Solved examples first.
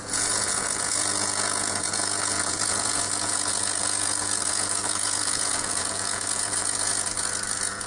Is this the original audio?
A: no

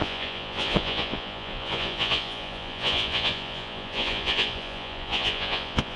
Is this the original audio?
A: no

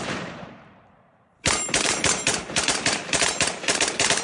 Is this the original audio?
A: no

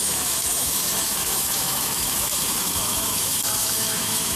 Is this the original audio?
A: no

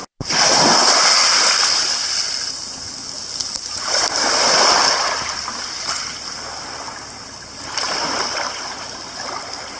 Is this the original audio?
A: yes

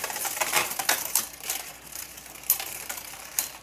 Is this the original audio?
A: no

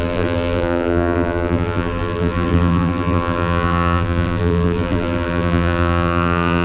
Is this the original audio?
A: no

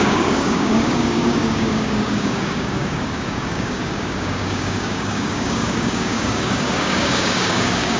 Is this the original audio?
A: no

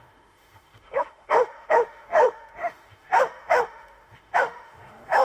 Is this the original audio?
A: no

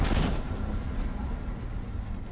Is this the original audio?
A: yes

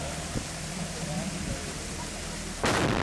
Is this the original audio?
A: yes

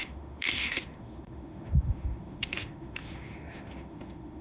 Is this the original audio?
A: no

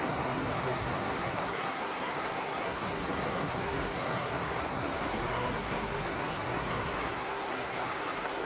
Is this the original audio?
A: no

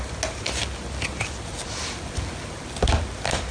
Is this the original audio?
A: yes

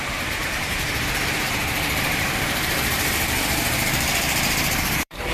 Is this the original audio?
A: no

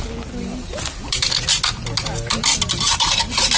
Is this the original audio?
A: yes